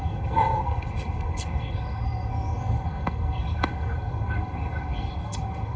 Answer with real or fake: fake